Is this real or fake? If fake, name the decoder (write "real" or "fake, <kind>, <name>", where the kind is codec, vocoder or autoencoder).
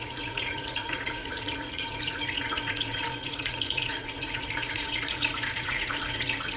fake, vocoder, Vocos